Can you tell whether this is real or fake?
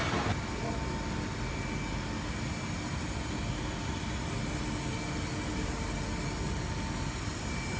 real